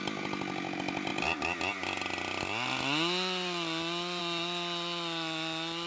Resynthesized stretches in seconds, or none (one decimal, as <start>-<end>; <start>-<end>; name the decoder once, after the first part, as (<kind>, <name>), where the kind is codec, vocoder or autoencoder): none